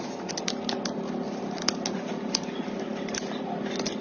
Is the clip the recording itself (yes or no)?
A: yes